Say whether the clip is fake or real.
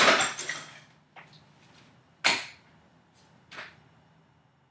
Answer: real